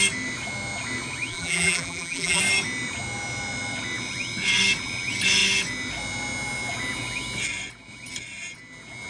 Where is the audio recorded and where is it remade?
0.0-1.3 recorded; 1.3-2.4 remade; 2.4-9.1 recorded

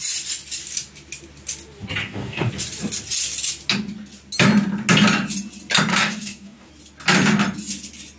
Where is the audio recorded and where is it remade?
0.0-2.0 recorded; 2.0-2.5 remade; 2.5-5.9 recorded; 5.9-6.7 remade; 6.7-8.2 recorded

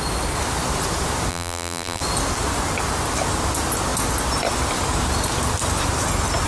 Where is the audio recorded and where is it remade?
0.0-1.3 recorded; 1.3-2.0 remade; 2.0-6.5 recorded

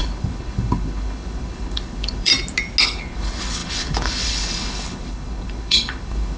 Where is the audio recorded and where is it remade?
0.0-2.3 remade; 2.3-2.8 recorded; 2.8-6.4 remade

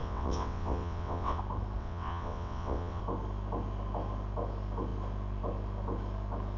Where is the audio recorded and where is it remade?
0.0-1.4 remade; 1.4-1.8 recorded; 1.8-3.0 remade; 3.0-6.6 recorded

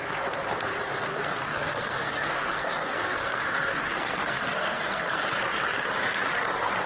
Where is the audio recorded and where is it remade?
0.0-1.1 recorded; 1.1-5.2 remade; 5.2-6.9 recorded